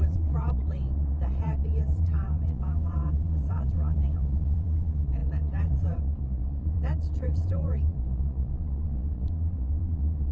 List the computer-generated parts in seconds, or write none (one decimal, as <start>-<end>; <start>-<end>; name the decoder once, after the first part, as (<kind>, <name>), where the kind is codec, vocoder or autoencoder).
0.0-10.3 (vocoder, Vocos)